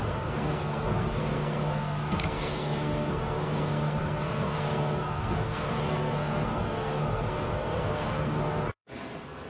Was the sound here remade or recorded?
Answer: remade